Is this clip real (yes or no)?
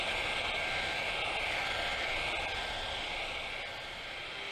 yes